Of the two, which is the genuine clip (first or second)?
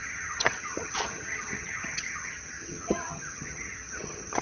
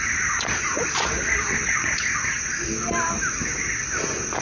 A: second